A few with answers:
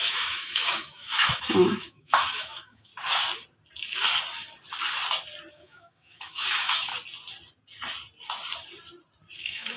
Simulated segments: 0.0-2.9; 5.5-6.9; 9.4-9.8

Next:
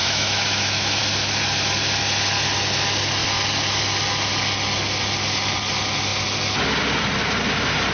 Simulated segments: 0.0-1.0

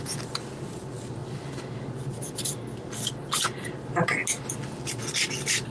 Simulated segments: none

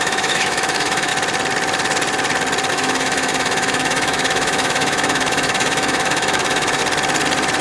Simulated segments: 0.0-1.1; 2.7-6.8

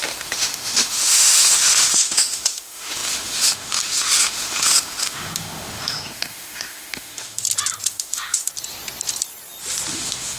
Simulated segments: 0.0-7.4; 7.9-8.5; 9.9-10.4

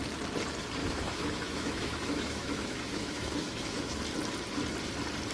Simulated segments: 0.8-4.0